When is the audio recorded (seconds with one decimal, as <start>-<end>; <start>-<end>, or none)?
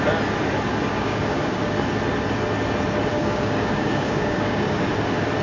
0.0-0.9; 1.7-3.1; 4.8-5.4